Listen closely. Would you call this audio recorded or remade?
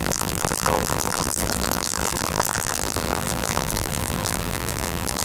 remade